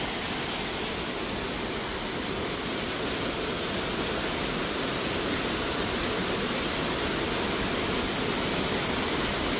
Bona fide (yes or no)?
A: yes